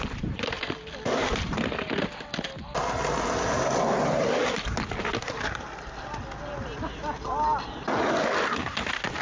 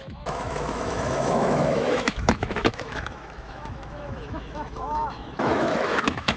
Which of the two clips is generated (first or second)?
second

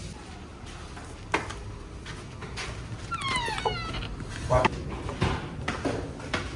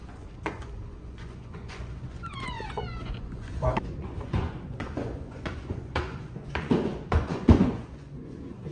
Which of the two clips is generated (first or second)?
second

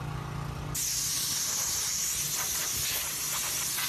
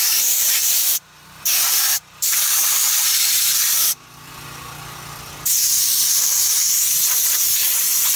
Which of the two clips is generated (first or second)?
second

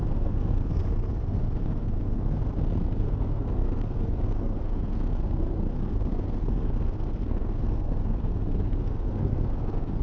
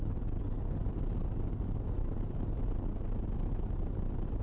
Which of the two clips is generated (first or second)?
first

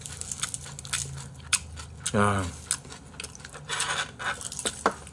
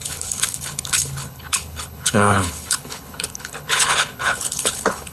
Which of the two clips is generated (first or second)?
second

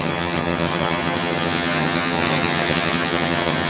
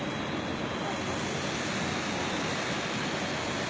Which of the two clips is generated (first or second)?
first